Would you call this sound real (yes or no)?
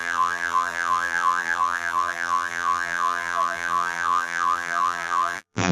no